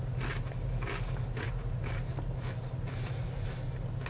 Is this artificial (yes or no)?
no